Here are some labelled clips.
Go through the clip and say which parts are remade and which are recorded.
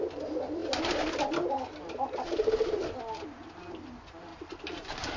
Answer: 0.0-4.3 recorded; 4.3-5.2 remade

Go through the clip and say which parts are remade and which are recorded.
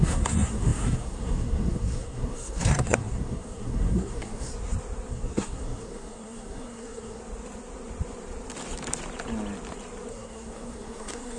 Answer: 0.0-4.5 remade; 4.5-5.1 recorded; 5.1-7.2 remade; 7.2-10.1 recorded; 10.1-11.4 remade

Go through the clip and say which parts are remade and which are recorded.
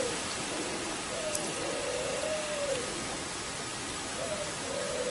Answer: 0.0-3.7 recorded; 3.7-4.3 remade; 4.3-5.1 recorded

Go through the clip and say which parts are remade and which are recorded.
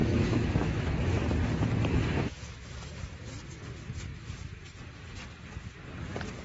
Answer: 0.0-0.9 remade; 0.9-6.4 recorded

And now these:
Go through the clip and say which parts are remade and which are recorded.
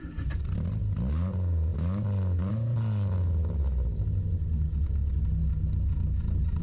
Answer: 0.0-6.6 recorded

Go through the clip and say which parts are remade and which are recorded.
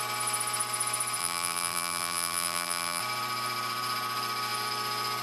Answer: 0.0-1.2 recorded; 1.2-3.0 remade; 3.0-5.2 recorded